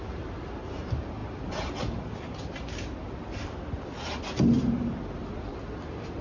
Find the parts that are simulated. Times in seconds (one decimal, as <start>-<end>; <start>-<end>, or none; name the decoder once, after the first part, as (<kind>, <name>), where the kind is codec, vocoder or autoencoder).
none

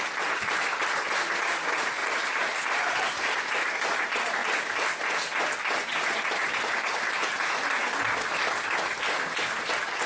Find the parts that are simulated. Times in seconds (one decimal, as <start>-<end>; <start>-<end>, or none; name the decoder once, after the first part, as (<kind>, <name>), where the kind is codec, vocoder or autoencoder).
2.0-3.5 (vocoder, BigVGAN v2)

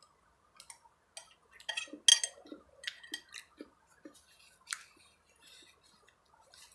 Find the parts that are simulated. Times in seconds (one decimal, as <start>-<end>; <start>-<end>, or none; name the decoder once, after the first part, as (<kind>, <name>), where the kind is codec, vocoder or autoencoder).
none

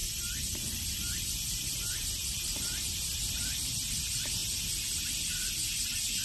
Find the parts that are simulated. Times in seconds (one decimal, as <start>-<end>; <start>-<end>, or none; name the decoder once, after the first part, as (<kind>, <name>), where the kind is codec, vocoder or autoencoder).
0.0-3.7 (vocoder, BigVGAN v2)

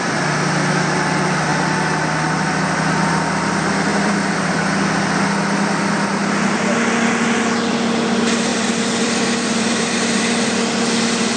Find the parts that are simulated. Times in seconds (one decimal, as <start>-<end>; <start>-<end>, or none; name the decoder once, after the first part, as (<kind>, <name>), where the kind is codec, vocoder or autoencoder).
3.9-4.5 (vocoder, BigVGAN v2); 8.5-10.5

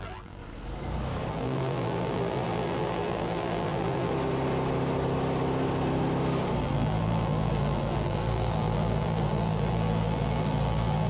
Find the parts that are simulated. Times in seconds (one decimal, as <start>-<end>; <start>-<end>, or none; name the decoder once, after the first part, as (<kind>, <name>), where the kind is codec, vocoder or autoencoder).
0.0-0.4 (vocoder, BigVGAN v2); 1.3-4.1; 6.6-11.1

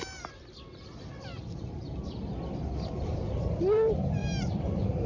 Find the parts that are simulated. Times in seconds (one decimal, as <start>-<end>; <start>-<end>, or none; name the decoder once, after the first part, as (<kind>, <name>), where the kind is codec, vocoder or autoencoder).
0.0-5.1 (vocoder, BigVGAN v2)